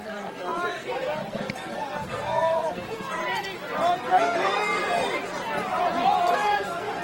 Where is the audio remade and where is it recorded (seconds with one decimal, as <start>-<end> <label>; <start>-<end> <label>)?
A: 0.0-3.2 remade; 3.2-3.9 recorded; 3.9-4.8 remade; 4.8-6.3 recorded; 6.3-7.0 remade